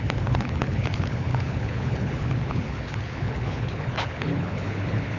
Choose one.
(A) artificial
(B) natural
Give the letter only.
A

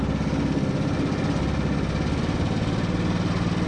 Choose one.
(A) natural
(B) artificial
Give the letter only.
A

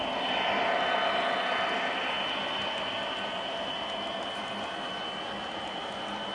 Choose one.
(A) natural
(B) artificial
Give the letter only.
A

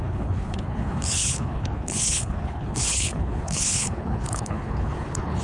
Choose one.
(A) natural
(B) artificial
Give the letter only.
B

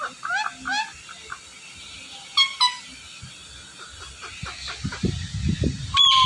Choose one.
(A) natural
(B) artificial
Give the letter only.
A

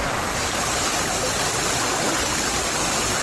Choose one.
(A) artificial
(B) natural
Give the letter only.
B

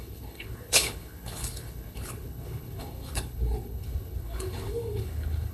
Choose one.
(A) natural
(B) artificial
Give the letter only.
B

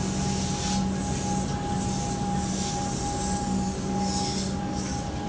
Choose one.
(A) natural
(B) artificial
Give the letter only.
A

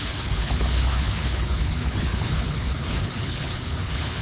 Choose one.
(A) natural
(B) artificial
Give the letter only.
B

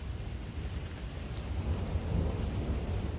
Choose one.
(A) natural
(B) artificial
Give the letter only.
A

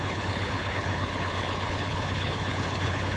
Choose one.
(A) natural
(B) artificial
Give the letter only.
B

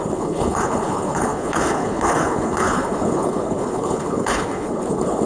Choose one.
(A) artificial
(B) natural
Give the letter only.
A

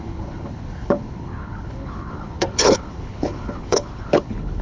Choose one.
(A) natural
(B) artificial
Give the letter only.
B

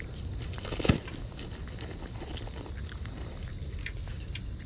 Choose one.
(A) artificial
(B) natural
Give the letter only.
B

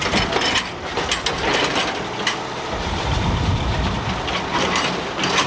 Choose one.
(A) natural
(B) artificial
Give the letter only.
A